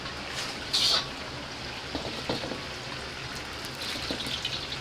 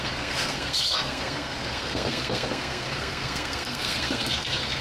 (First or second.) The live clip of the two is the first